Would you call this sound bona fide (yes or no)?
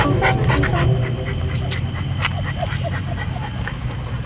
yes